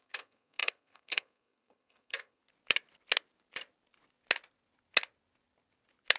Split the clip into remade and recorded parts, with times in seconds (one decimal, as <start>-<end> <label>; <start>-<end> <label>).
0.0-2.4 remade; 2.4-6.2 recorded